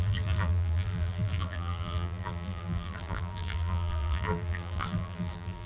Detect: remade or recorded remade